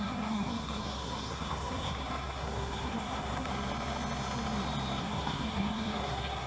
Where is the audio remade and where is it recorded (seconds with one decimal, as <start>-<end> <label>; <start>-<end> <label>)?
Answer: 0.0-3.5 remade; 3.5-5.0 recorded; 5.0-6.5 remade